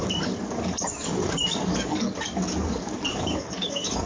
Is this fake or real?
fake